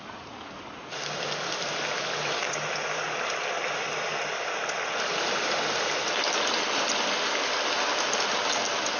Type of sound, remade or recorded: recorded